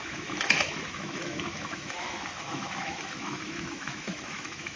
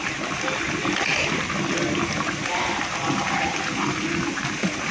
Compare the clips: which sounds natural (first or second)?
second